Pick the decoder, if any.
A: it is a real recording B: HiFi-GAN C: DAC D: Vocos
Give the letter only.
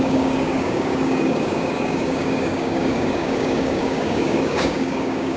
C